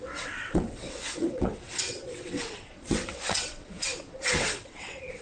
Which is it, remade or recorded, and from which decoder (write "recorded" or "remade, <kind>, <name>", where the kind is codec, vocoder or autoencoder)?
remade, vocoder, WaveNeXt